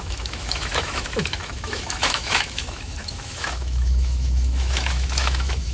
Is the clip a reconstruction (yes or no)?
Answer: yes